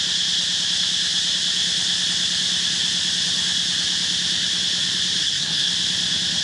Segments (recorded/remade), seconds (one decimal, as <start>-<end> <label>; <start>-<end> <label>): 0.0-5.2 recorded; 5.2-5.7 remade; 5.7-6.4 recorded